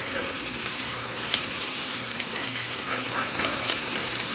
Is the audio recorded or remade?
remade